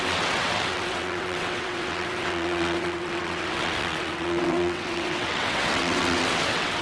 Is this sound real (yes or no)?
no